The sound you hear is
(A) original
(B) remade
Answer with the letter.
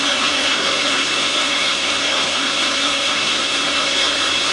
B